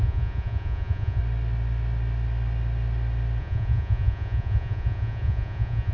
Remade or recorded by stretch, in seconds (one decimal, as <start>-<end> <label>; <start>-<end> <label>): 0.0-1.2 remade; 1.2-3.4 recorded; 3.4-5.9 remade